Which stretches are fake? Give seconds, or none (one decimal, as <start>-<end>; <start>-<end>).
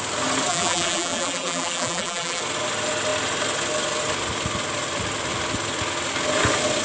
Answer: 0.5-2.4